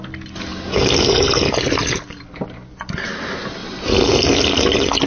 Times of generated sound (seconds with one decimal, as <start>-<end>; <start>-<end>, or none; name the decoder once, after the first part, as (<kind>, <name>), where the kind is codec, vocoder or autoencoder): none